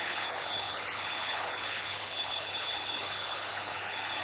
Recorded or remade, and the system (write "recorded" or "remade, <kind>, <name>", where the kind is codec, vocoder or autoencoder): remade, codec, HILCodec